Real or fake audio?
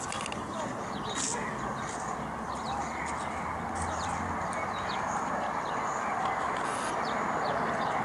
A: real